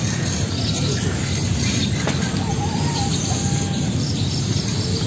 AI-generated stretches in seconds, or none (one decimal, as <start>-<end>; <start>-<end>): none